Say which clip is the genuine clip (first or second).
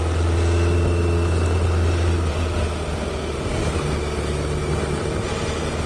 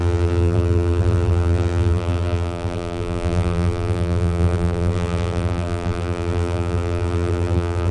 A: first